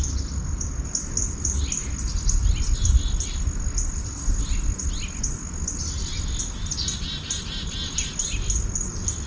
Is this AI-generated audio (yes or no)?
no